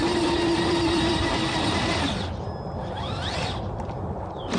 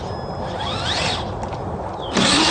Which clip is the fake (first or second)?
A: first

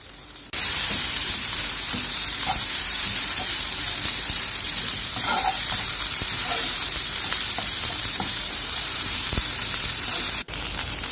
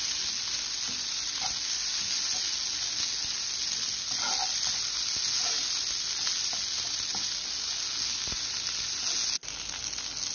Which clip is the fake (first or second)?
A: first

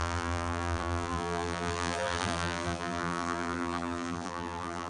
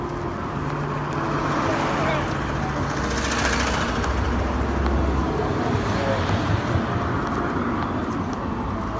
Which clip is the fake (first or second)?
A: first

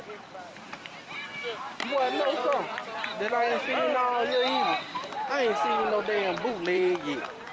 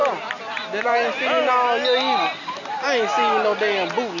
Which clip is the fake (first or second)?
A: first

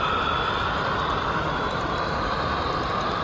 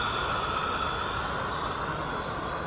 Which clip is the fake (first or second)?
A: first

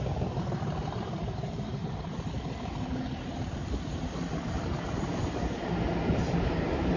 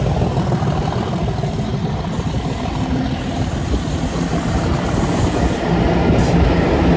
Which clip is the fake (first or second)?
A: first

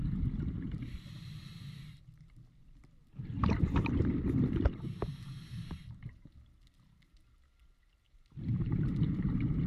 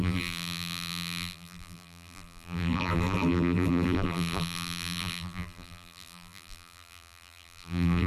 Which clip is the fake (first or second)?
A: second